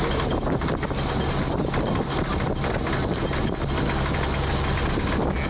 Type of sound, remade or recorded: recorded